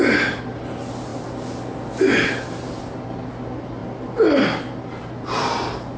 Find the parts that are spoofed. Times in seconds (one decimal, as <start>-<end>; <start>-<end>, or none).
none